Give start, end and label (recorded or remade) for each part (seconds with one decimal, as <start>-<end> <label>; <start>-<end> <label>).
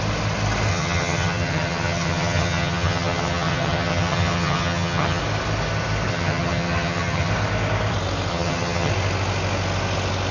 0.0-0.7 recorded; 0.7-5.2 remade; 5.2-6.1 recorded; 6.1-7.3 remade; 7.3-8.3 recorded; 8.3-8.9 remade; 8.9-10.3 recorded